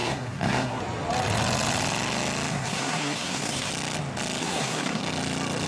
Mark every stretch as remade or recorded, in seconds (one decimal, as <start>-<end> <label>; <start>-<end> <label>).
0.0-0.8 remade; 0.8-2.5 recorded; 2.5-3.7 remade; 3.7-4.4 recorded; 4.4-5.0 remade; 5.0-5.7 recorded